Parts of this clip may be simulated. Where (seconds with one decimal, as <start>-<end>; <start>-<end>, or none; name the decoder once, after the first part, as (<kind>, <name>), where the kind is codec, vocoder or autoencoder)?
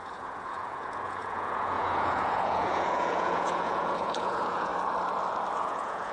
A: 0.0-4.7 (vocoder, Vocos); 5.6-6.1